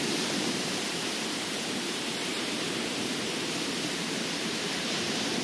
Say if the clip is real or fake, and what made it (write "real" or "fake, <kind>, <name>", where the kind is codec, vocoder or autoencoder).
fake, vocoder, BigVGAN v2